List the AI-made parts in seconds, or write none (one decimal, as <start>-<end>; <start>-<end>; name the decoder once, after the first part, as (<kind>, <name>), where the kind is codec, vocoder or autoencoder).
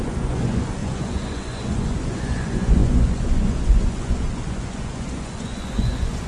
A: 0.0-6.3 (vocoder, Vocos)